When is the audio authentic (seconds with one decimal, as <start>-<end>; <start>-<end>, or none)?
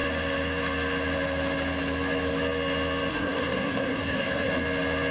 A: 0.0-3.1; 4.5-5.1